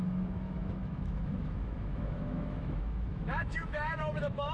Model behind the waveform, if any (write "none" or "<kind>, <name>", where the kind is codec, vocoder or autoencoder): autoencoder, DAC-VAE